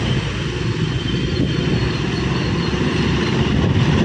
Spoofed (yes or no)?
no